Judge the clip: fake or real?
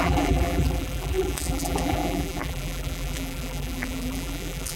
fake